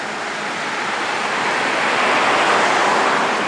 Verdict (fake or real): real